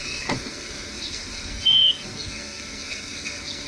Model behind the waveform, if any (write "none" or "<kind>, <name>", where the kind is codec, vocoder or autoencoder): codec, SNAC